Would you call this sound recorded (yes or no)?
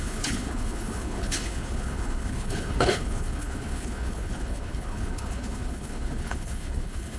no